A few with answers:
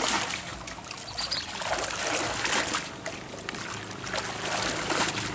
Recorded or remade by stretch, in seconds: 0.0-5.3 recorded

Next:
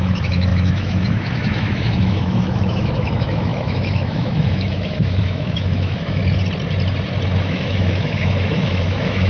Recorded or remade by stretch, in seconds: 0.0-6.2 remade; 6.2-7.4 recorded; 7.4-9.3 remade